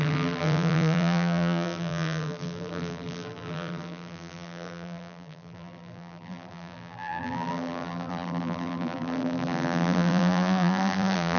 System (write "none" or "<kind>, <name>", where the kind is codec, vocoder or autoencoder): vocoder, BigVGAN v2